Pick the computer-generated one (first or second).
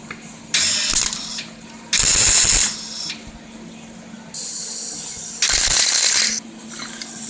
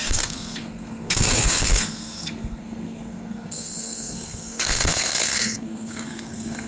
second